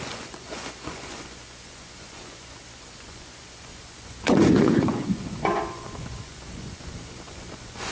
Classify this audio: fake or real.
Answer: fake